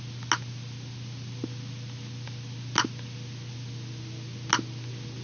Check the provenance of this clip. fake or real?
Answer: real